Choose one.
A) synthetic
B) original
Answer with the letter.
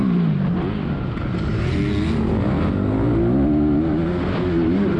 B